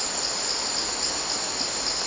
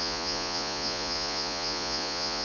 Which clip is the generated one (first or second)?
second